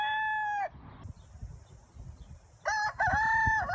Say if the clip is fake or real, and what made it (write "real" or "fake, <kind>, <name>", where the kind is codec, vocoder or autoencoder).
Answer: real